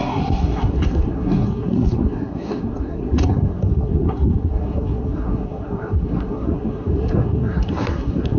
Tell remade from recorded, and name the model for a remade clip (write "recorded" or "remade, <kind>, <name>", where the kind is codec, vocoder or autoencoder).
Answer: remade, codec, SNAC